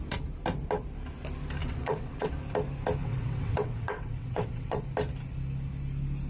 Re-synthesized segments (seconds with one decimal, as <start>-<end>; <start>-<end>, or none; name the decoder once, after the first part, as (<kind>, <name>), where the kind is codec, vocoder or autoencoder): 1.6-2.3 (vocoder, WaveNeXt); 3.0-4.8